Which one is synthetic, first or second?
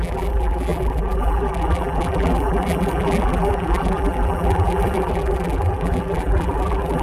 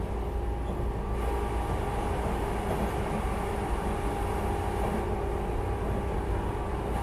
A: first